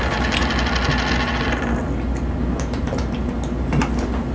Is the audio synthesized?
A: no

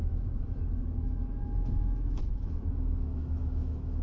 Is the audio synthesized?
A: yes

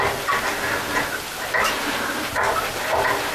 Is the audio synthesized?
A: no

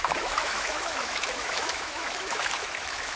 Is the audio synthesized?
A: yes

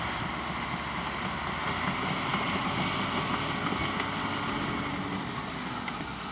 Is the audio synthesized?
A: no